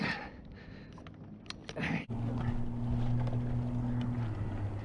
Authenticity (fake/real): real